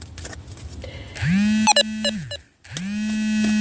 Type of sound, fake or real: real